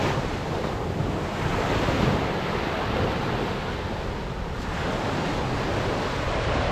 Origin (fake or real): real